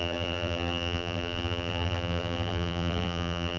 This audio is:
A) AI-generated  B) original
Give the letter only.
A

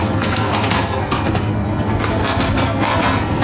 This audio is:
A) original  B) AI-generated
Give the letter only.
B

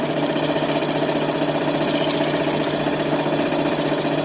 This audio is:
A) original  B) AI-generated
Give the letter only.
A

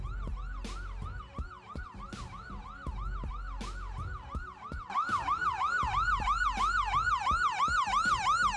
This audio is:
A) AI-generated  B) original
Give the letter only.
B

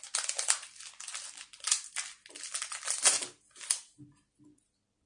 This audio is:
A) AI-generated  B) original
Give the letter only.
B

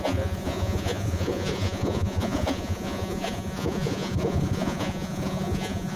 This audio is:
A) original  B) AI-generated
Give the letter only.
B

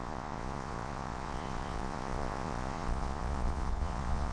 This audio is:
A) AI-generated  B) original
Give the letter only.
A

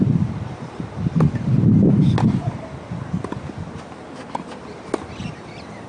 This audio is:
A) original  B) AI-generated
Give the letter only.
A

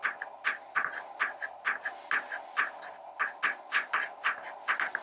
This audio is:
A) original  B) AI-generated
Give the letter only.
A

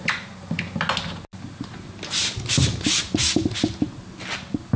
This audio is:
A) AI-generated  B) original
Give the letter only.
B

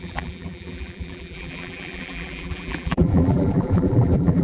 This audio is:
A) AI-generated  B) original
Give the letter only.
A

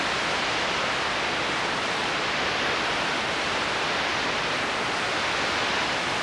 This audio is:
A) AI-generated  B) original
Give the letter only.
B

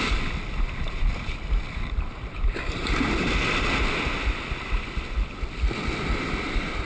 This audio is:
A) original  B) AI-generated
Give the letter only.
A